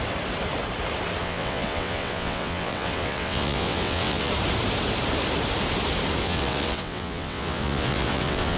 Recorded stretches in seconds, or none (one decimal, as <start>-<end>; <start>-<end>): 0.0-1.2; 4.3-6.2